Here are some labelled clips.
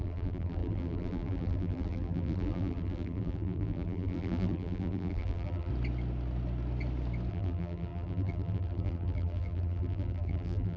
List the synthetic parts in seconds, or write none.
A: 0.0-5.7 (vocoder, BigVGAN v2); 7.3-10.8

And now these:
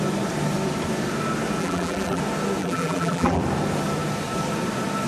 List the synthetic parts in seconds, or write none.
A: 1.6-2.2 (vocoder, BigVGAN v2); 2.6-3.4

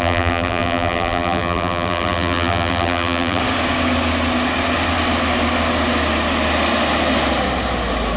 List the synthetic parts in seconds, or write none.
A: 0.0-3.4 (vocoder, BigVGAN v2)

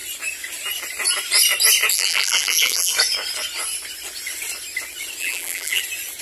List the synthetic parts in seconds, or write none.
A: 1.9-2.9 (vocoder, BigVGAN v2); 5.2-5.8

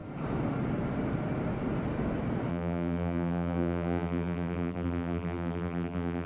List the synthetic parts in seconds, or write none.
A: 2.5-6.3 (vocoder, BigVGAN v2)

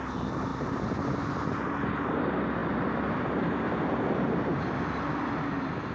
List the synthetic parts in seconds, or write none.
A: 2.6-3.5 (vocoder, BigVGAN v2)

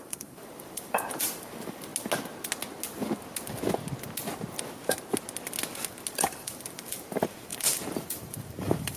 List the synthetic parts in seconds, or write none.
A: 0.0-1.9 (vocoder, BigVGAN v2); 6.1-9.0

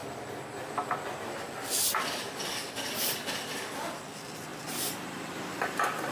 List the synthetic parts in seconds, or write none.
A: 4.5-6.1 (vocoder, BigVGAN v2)